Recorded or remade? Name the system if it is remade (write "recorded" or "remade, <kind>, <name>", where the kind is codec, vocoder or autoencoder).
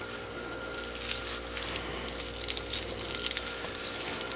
recorded